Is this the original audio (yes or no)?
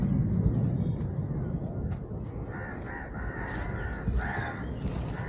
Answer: yes